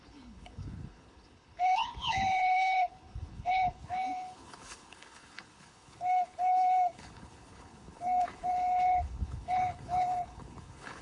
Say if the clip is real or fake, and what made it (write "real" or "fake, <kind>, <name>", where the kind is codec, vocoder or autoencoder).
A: fake, codec, HILCodec